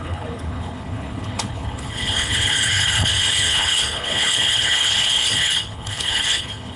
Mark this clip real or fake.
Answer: fake